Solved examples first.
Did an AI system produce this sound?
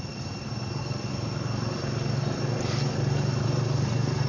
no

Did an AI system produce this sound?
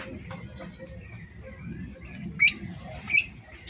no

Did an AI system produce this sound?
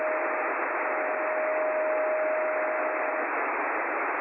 no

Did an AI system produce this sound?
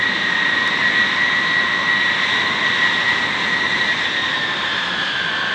yes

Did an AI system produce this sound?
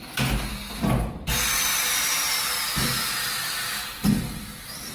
no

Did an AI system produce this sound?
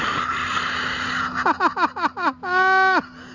no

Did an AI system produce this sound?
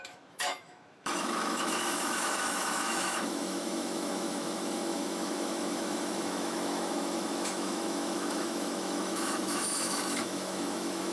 yes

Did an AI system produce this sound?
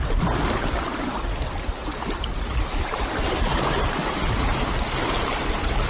no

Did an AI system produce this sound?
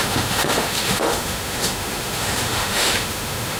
yes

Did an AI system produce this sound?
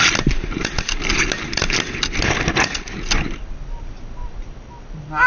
no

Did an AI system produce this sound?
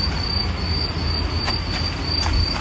no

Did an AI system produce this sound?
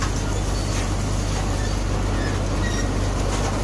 no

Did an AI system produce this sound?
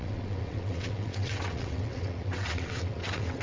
yes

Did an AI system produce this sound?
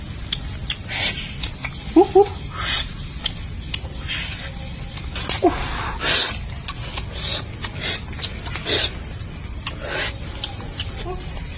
no